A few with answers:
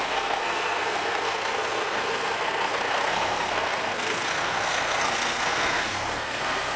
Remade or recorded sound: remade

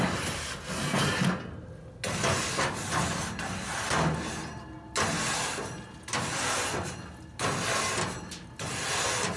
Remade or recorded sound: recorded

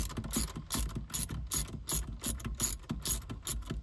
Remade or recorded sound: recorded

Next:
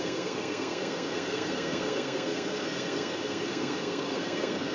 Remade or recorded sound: remade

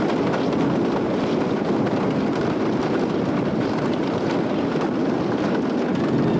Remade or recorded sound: recorded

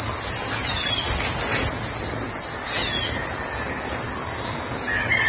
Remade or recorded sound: recorded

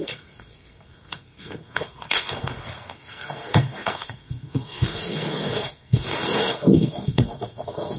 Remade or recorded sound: remade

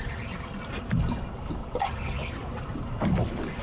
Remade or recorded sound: recorded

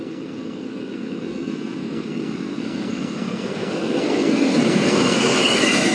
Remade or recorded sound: remade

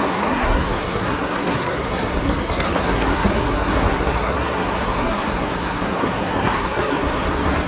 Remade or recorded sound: remade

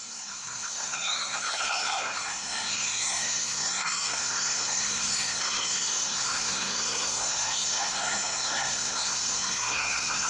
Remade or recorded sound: remade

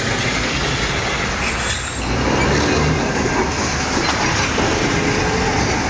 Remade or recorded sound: recorded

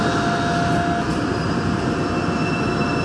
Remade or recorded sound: recorded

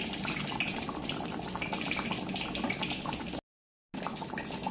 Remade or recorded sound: recorded